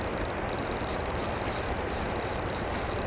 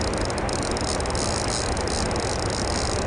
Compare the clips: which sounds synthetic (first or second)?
first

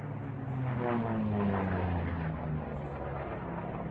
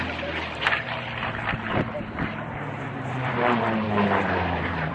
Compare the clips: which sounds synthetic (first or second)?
second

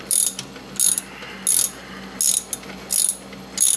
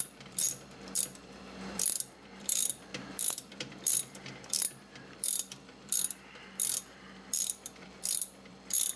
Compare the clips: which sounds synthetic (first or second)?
second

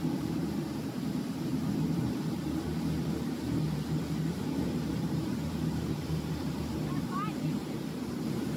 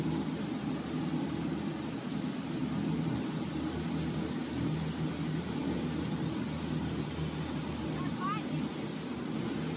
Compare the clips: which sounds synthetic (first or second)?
first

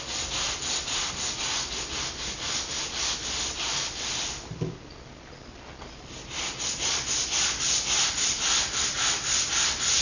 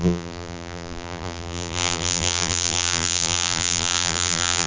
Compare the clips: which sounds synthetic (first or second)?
second